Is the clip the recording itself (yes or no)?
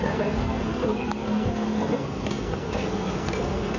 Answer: no